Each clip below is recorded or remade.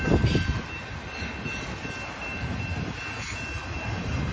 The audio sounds recorded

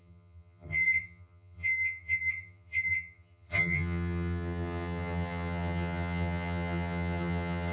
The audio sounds remade